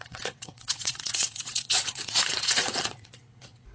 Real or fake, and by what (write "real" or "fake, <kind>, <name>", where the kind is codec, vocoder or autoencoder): fake, vocoder, WaveNeXt